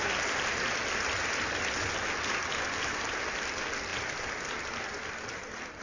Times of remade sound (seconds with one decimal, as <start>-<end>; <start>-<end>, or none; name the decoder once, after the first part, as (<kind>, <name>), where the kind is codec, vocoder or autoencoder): none